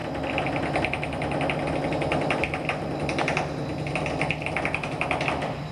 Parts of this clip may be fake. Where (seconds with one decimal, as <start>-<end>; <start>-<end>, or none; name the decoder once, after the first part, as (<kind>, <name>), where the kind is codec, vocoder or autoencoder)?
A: none